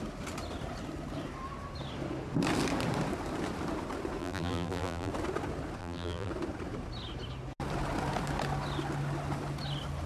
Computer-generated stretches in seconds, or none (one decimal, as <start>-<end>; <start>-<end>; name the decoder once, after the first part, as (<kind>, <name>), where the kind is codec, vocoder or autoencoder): 4.2-5.1 (vocoder, BigVGAN v2); 5.8-6.3